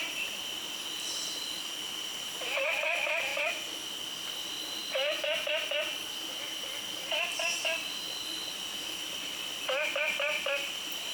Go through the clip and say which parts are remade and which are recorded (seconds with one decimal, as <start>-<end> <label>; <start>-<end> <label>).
0.0-2.1 remade; 2.1-2.6 recorded; 2.6-3.3 remade; 3.3-4.3 recorded; 4.3-4.8 remade; 4.8-8.5 recorded; 8.5-11.1 remade